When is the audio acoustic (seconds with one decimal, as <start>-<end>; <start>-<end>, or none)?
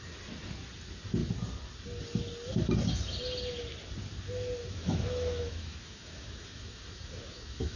0.0-4.6